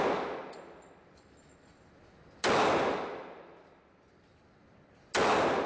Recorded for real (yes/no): yes